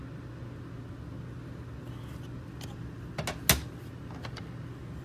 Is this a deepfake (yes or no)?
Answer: no